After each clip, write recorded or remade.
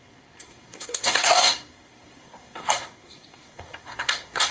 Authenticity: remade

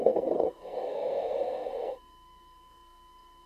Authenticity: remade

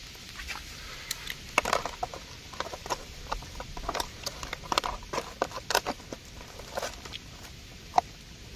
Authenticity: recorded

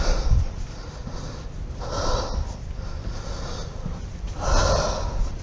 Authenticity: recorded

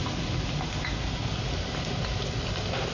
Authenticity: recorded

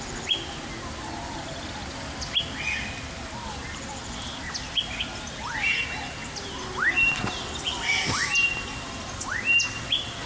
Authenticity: recorded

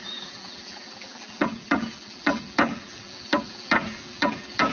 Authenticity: remade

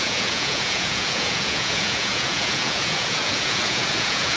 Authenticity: remade